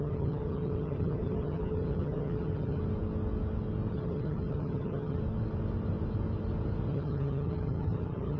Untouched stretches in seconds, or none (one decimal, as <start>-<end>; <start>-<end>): 2.8-3.9; 5.2-6.9